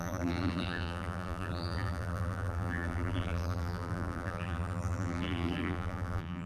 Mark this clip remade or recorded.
remade